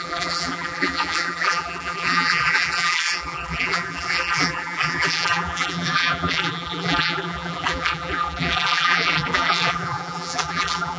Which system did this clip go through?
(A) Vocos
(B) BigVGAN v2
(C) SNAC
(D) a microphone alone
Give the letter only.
B